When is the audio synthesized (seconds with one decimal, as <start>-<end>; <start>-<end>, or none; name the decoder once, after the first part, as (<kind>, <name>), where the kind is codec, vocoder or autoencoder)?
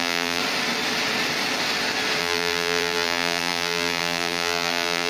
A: 0.0-0.4 (vocoder, BigVGAN v2); 2.2-5.1